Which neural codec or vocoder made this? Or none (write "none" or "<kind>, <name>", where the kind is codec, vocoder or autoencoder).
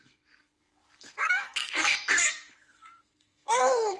codec, SNAC